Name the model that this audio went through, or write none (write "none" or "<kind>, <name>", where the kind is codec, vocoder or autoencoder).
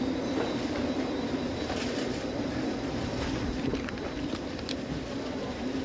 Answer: vocoder, BigVGAN v2